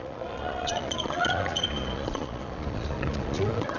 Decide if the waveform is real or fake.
fake